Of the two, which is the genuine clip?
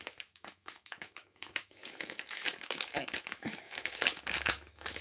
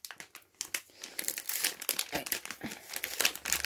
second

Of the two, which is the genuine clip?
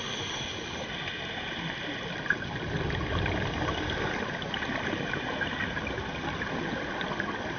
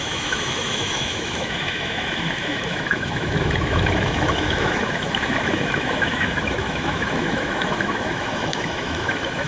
first